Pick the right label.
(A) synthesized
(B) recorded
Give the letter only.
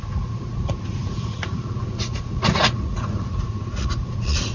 A